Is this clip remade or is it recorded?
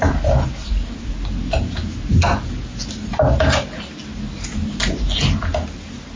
recorded